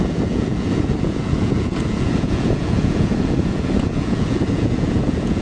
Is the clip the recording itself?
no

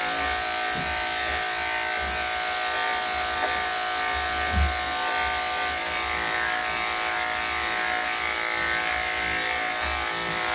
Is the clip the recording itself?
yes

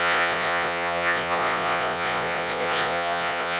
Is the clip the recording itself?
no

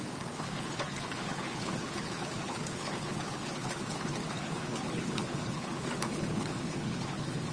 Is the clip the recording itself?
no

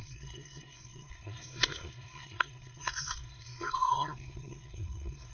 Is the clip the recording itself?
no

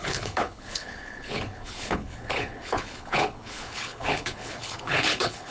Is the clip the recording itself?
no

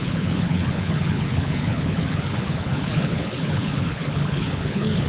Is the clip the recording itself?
no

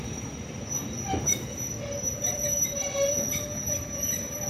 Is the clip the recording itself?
yes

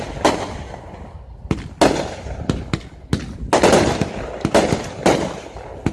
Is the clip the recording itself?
yes